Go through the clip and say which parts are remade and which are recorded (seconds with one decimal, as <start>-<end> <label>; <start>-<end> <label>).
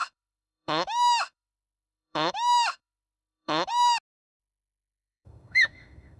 0.0-3.7 remade; 3.7-4.4 recorded; 4.4-6.2 remade